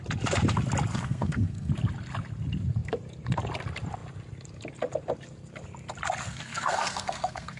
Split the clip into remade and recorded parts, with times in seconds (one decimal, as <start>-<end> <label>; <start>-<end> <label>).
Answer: 0.0-0.9 recorded; 0.9-1.7 remade; 1.7-6.2 recorded; 6.2-7.6 remade